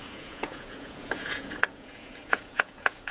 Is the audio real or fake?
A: fake